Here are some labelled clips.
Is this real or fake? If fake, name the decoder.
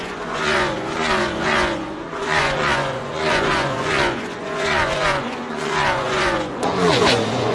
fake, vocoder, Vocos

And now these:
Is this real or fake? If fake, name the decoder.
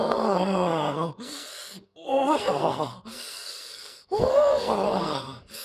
fake, codec, SNAC